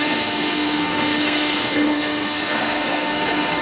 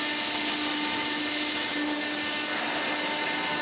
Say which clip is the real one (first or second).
second